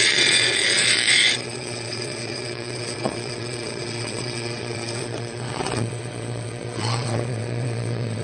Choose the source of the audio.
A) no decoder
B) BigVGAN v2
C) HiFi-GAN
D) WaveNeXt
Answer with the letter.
D